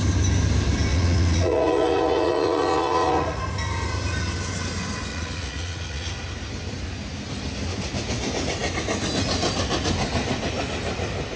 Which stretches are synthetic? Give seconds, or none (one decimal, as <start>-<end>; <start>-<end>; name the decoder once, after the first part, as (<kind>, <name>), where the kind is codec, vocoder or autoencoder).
0.9-3.4 (vocoder, Vocos); 5.1-6.1